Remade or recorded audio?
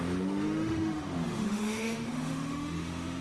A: remade